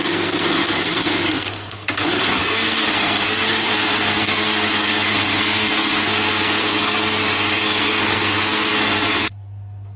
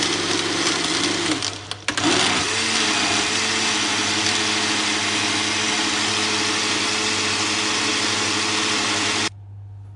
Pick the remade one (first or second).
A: first